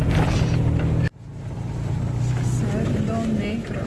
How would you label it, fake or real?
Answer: real